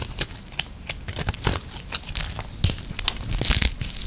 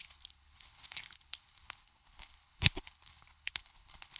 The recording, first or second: first